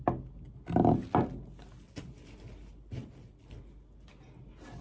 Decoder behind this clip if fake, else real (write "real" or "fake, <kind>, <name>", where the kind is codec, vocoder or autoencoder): real